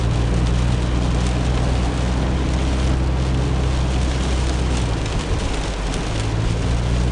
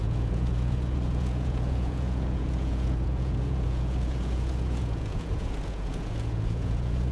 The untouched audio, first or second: first